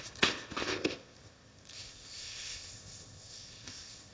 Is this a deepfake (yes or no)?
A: yes